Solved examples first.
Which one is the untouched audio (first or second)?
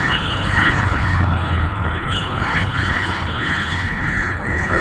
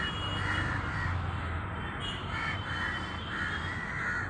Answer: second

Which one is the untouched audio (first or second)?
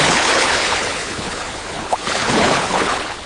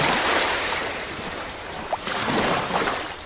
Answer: second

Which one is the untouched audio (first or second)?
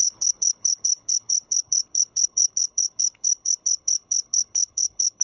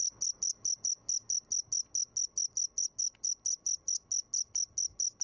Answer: second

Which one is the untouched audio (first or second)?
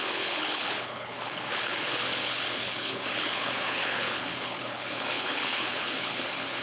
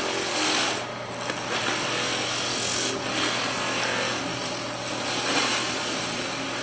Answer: second